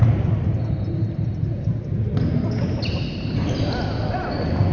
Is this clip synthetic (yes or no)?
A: no